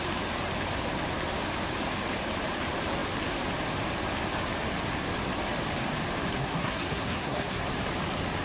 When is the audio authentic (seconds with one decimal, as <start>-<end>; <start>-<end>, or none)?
0.0-6.4; 7.6-8.4